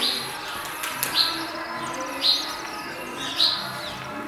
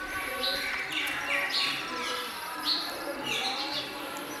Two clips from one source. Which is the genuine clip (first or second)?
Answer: first